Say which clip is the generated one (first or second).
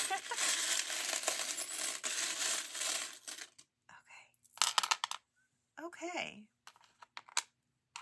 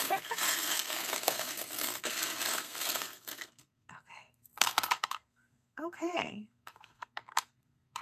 second